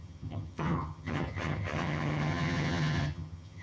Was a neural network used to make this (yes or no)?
yes